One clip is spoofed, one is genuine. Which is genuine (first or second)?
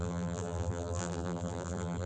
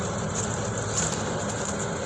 second